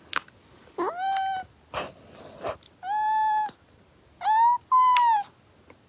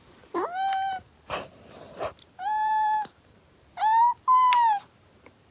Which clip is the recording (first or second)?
first